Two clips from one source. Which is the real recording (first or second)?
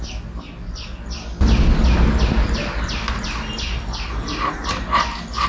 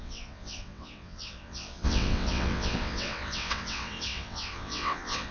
first